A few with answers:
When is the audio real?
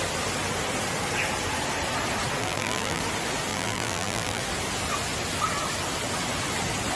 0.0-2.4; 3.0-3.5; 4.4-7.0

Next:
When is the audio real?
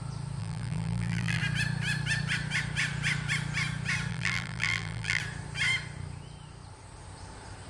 0.0-0.4; 1.4-4.1; 5.2-7.7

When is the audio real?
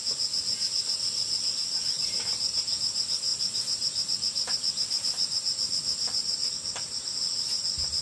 0.0-8.0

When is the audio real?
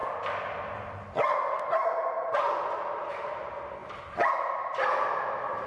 0.0-5.7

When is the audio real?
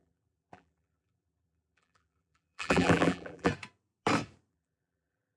3.5-4.5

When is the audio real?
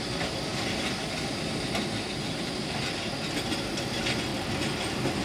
0.0-0.5; 3.1-4.3